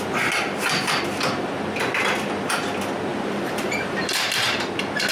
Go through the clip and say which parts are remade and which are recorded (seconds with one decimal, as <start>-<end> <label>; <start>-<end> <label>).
0.0-3.1 recorded; 3.1-4.3 remade; 4.3-5.1 recorded